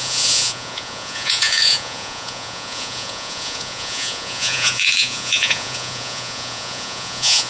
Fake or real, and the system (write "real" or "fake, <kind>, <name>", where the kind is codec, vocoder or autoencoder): fake, vocoder, Vocos